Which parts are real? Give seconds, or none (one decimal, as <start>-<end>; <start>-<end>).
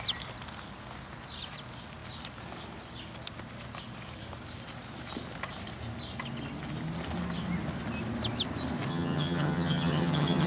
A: 0.0-8.9